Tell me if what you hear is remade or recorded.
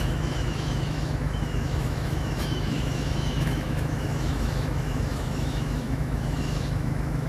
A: remade